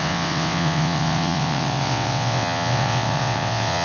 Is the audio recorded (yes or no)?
no